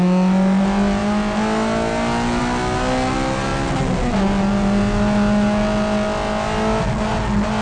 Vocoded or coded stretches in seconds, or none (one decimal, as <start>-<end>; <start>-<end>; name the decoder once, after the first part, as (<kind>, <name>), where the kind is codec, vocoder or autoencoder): none